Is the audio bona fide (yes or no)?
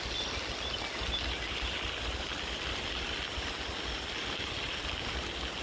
yes